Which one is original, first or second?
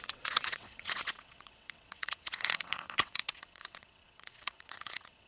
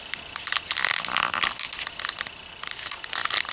second